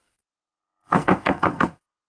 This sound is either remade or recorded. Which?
remade